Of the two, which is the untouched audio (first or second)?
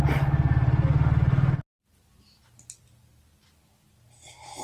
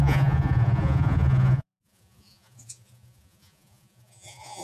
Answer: first